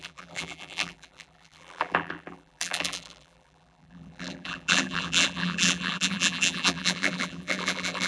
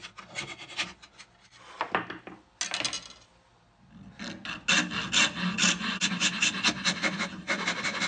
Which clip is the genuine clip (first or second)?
second